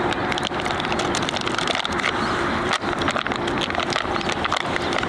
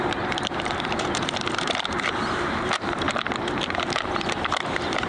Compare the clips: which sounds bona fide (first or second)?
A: first